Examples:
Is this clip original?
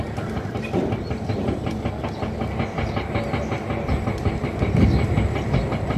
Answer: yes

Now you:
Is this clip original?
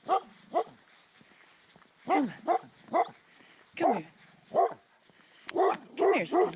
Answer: yes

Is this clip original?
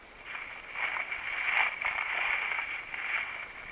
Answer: yes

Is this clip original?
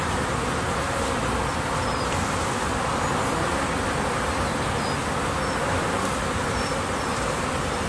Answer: yes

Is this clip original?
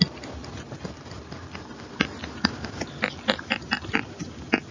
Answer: yes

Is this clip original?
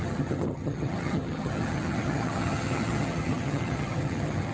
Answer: no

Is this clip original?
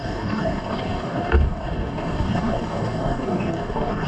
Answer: no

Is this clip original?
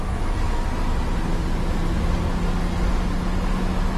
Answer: yes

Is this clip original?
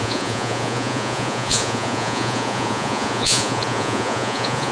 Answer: no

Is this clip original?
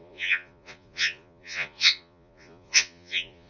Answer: no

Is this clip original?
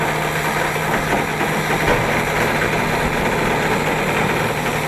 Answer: yes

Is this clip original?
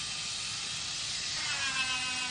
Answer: yes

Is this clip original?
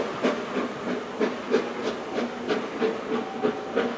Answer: yes